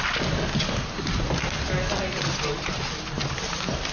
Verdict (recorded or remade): recorded